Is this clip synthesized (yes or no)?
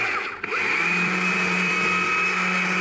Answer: no